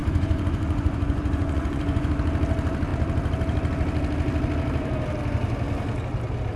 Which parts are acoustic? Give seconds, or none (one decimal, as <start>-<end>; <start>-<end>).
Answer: 2.1-6.6